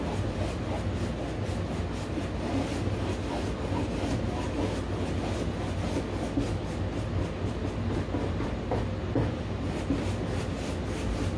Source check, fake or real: real